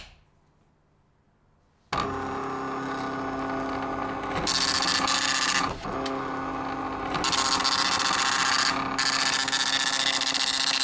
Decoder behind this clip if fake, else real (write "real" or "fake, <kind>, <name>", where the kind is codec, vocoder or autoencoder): real